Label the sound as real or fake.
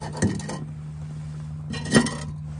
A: real